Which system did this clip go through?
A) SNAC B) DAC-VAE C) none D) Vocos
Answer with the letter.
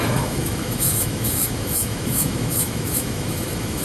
B